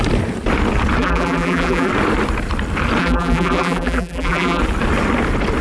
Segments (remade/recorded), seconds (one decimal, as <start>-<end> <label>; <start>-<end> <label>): 0.0-1.0 recorded; 1.0-1.9 remade; 1.9-3.0 recorded; 3.0-4.6 remade; 4.6-5.6 recorded

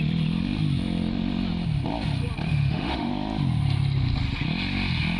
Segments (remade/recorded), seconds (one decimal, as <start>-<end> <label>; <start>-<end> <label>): 0.0-2.5 recorded; 2.5-3.1 remade; 3.1-5.2 recorded

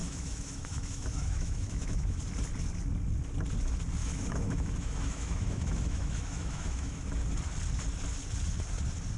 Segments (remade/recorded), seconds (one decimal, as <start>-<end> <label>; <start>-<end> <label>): 0.0-2.2 remade; 2.2-4.0 recorded; 4.0-7.0 remade; 7.0-9.2 recorded

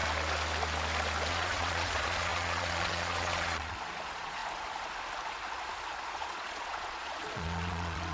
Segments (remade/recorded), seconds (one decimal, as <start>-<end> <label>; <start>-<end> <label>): 0.0-1.3 recorded; 1.3-4.4 remade; 4.4-6.1 recorded; 6.1-8.1 remade

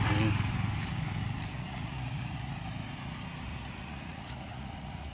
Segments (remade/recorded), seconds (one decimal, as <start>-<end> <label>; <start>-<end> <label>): 0.0-1.5 recorded; 1.5-2.5 remade; 2.5-3.5 recorded; 3.5-5.1 remade

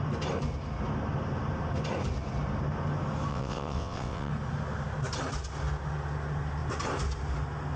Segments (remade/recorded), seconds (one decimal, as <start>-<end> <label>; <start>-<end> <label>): 0.0-3.3 recorded; 3.3-4.3 remade; 4.3-7.8 recorded

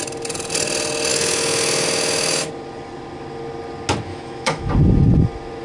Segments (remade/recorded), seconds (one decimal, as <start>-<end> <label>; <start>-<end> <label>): 0.0-1.1 recorded; 1.1-2.5 remade; 2.5-4.1 recorded; 4.1-4.7 remade; 4.7-5.6 recorded

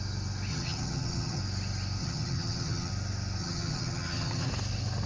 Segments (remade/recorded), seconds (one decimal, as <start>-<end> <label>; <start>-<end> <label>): 0.0-0.5 recorded; 0.5-1.4 remade; 1.4-2.0 recorded; 2.0-2.9 remade; 2.9-3.4 recorded; 3.4-4.5 remade; 4.5-5.1 recorded